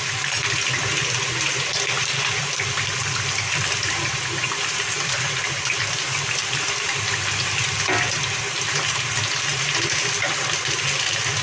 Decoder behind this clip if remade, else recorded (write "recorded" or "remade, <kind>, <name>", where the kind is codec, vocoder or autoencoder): recorded